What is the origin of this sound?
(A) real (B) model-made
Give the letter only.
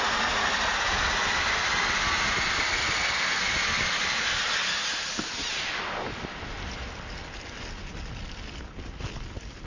A